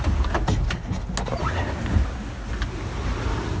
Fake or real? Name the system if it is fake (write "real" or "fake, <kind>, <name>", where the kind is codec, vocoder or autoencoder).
real